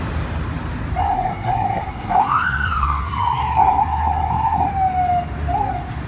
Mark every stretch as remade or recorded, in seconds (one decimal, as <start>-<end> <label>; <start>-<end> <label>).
0.0-1.0 recorded; 1.0-4.7 remade; 4.7-6.1 recorded